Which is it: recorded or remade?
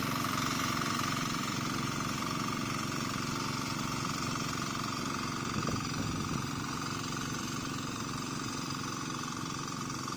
remade